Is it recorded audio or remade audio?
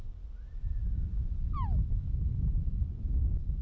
recorded